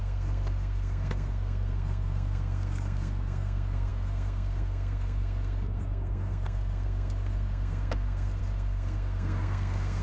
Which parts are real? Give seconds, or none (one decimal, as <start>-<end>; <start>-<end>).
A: none